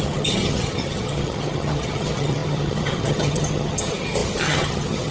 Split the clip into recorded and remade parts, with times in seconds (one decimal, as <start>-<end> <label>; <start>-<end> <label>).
0.0-5.1 remade